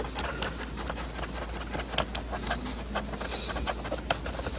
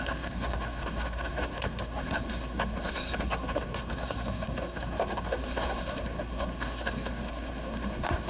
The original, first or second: first